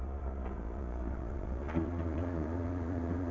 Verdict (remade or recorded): remade